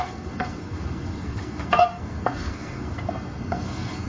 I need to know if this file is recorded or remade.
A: remade